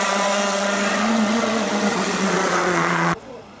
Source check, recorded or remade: remade